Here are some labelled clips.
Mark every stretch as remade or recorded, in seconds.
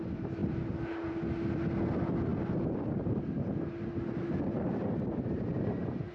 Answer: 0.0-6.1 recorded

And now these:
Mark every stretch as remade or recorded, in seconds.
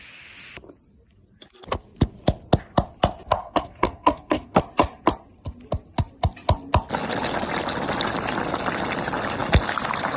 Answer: 0.0-3.4 recorded; 3.4-4.6 remade; 4.6-10.2 recorded